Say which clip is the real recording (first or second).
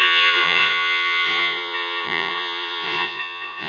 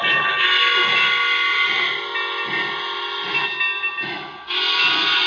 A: second